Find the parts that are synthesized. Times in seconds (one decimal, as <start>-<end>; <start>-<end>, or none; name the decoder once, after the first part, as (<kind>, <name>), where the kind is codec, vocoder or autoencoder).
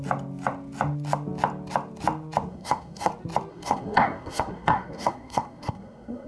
2.5-3.1 (codec, SNAC); 3.5-6.3